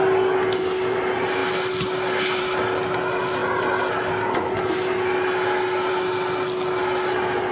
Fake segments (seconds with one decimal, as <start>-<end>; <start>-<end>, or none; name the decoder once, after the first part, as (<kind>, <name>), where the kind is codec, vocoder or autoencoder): none